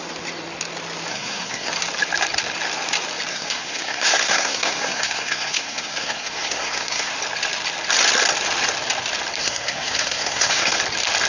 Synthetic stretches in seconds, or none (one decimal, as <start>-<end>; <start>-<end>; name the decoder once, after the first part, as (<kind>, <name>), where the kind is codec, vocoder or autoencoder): 1.1-1.7 (codec, SNAC); 3.3-7.1; 9.4-10.8